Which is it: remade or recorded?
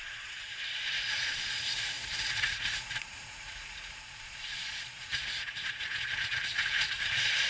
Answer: remade